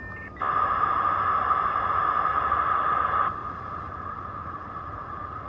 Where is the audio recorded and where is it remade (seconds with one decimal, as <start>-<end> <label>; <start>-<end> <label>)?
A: 0.0-2.3 recorded; 2.3-3.0 remade; 3.0-3.4 recorded; 3.4-5.5 remade